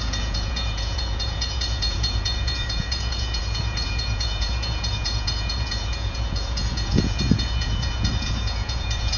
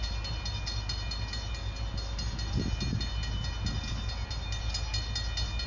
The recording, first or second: second